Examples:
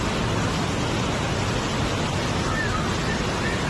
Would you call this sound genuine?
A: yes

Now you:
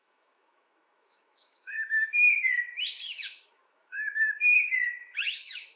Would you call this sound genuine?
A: no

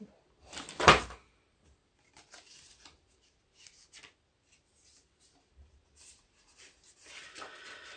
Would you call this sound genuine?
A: yes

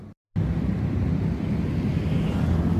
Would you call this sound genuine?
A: yes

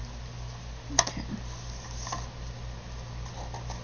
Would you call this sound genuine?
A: yes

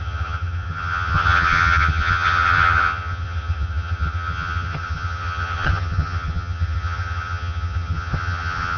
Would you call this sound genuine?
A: no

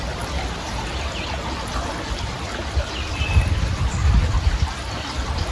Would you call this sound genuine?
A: yes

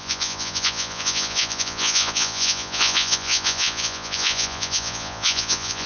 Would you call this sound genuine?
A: no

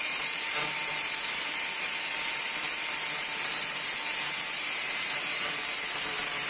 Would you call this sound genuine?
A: no